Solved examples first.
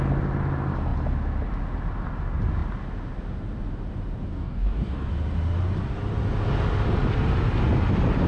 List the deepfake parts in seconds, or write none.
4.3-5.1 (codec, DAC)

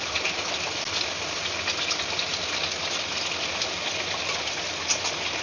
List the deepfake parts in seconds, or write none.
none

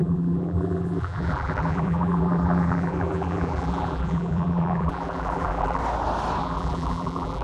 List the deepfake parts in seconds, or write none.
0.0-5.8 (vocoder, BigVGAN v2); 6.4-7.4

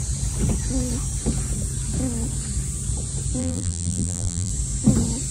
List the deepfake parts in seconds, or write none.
3.4-4.5 (vocoder, BigVGAN v2)